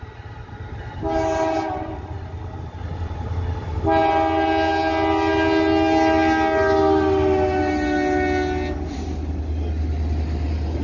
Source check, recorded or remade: recorded